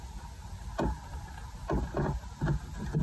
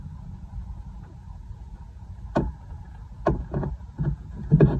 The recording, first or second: first